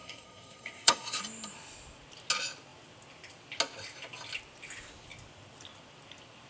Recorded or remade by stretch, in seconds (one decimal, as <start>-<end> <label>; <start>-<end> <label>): 0.0-1.2 remade; 1.2-6.5 recorded